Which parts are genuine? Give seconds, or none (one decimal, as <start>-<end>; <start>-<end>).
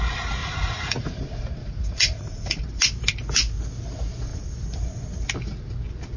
0.0-0.4; 1.2-1.6; 2.6-6.2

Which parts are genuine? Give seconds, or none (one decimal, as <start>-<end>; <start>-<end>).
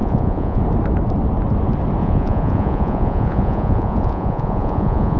0.6-2.0